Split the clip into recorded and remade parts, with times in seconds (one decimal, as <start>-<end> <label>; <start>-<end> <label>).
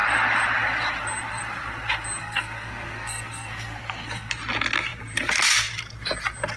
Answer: 0.0-2.2 recorded; 2.2-4.3 remade; 4.3-6.6 recorded